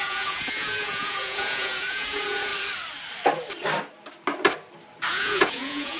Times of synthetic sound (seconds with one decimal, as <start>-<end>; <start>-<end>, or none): 0.0-2.5; 5.1-6.0